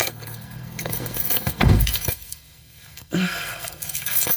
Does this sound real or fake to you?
fake